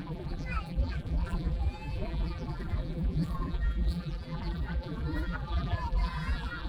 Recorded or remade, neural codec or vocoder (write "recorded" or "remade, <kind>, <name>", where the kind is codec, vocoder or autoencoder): remade, vocoder, BigVGAN v2